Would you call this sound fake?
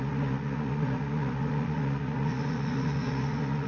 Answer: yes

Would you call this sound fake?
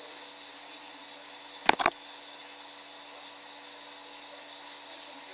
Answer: no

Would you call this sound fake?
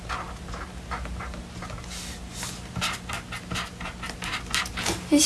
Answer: no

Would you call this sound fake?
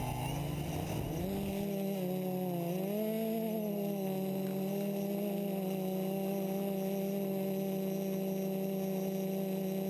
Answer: no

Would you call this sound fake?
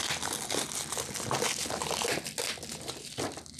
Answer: no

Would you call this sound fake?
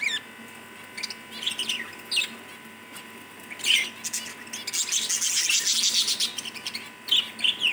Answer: no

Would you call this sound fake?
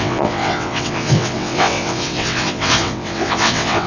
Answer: yes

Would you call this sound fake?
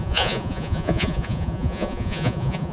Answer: yes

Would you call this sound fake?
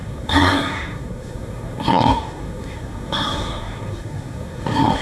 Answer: yes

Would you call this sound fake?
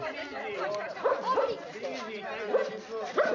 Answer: no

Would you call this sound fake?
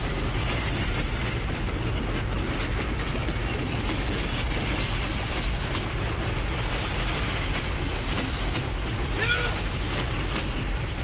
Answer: no